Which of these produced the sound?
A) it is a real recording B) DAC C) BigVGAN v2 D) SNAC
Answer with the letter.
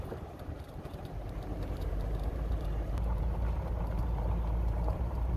C